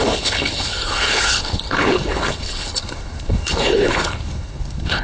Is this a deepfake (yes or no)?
yes